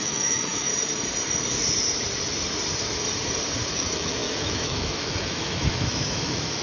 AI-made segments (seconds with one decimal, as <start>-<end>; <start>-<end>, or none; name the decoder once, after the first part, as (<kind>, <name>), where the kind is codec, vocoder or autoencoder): 0.0-0.7 (autoencoder, DAC-VAE); 3.7-6.6